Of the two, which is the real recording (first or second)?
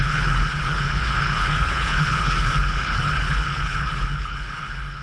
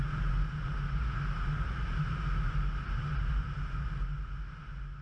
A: second